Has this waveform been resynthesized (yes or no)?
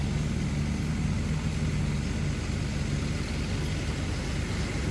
no